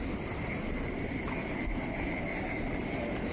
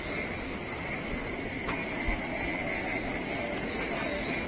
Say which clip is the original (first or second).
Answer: second